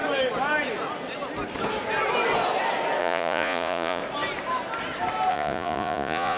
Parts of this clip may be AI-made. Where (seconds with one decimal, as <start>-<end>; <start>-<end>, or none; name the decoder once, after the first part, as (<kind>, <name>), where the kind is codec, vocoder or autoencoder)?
3.0-4.0 (vocoder, Vocos); 5.3-6.4

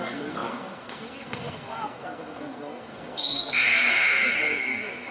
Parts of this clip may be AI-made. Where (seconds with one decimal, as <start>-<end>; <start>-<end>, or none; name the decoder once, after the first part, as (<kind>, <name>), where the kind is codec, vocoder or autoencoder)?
0.0-5.1 (codec, SNAC)

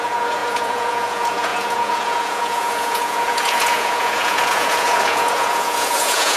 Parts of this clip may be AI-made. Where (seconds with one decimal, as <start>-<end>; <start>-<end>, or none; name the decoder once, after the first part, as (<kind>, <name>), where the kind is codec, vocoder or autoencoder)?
0.0-6.4 (vocoder, Vocos)

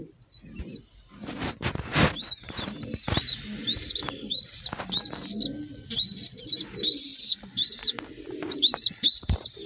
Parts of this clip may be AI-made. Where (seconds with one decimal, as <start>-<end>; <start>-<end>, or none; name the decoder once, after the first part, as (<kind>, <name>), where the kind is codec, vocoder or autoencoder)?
none

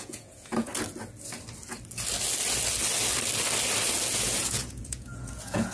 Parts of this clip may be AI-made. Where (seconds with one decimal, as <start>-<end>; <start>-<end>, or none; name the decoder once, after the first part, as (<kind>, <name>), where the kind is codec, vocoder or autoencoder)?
0.0-0.7 (vocoder, Vocos); 4.1-5.7